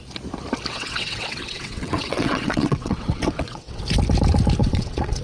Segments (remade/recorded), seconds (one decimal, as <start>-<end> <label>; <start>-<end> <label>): 0.0-0.7 recorded; 0.7-3.8 remade; 3.8-4.6 recorded; 4.6-5.2 remade